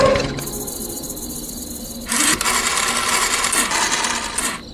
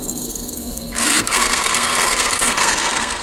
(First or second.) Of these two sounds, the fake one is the second